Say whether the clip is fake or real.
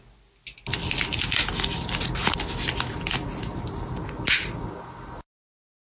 real